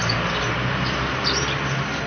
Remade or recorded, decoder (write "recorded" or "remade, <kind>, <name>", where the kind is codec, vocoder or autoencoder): recorded